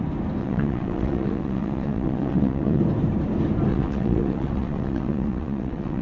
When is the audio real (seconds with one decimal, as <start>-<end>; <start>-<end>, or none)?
0.0-0.4; 2.8-3.7